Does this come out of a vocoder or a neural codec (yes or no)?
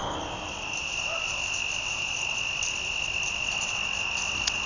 no